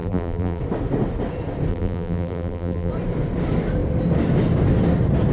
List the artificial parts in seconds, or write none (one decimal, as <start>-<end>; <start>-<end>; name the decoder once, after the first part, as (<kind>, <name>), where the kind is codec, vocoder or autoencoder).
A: 0.0-0.6 (vocoder, BigVGAN v2); 1.7-2.9

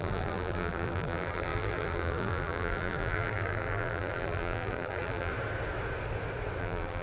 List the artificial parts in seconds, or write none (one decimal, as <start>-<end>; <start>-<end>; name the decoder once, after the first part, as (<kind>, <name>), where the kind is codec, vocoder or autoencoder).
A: 0.0-5.3 (vocoder, BigVGAN v2); 6.6-7.0